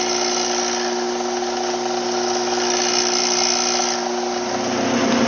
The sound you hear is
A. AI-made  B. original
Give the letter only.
B